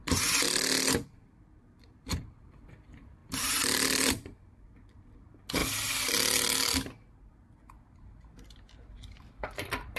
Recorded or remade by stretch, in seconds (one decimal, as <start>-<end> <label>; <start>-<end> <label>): 0.0-1.0 recorded; 1.0-5.6 remade; 5.6-8.2 recorded; 8.2-10.0 remade